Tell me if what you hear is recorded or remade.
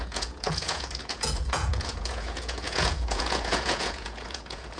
remade